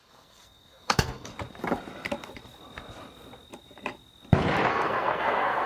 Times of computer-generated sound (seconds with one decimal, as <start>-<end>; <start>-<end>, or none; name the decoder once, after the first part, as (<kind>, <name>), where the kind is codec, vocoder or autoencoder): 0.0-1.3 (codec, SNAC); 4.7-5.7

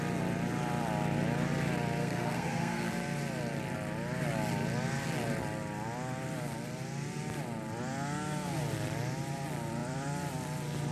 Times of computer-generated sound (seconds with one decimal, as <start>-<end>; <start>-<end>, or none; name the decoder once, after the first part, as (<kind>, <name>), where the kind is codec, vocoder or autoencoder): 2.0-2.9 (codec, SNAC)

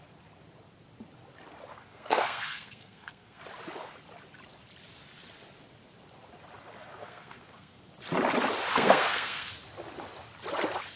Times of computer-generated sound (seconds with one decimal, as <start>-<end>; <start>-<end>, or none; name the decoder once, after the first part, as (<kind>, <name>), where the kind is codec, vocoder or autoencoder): 1.7-3.4 (codec, SNAC); 7.0-7.8; 8.7-9.5